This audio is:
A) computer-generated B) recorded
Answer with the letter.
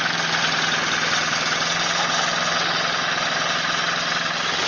B